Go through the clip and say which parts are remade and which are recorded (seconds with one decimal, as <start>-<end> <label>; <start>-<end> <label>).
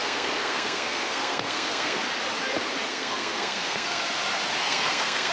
0.0-2.0 remade; 2.0-2.9 recorded; 2.9-4.0 remade; 4.0-4.6 recorded; 4.6-5.3 remade